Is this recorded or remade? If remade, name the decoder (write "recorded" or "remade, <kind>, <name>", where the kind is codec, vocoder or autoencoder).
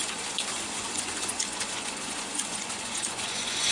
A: remade, vocoder, Vocos